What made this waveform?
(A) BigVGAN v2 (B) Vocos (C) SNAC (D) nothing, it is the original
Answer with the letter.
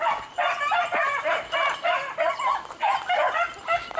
D